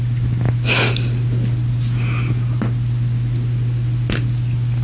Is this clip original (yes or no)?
yes